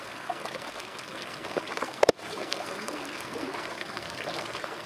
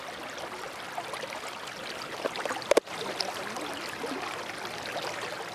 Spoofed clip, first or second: first